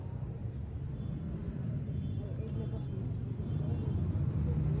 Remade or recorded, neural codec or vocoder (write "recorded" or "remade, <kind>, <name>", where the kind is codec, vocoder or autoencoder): recorded